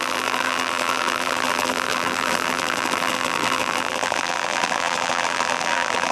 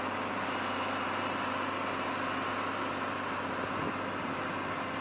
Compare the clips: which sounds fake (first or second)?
first